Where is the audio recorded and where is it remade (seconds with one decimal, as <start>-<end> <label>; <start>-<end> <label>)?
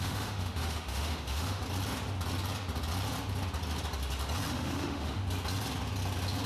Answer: 0.0-1.6 remade; 1.6-4.5 recorded; 4.5-5.2 remade; 5.2-6.5 recorded